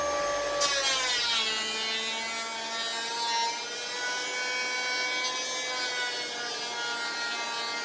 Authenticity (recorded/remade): recorded